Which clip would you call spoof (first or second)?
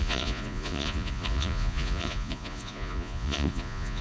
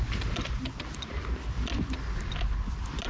first